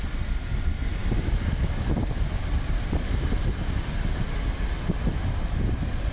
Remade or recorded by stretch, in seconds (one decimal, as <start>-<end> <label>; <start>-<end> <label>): 0.0-6.1 recorded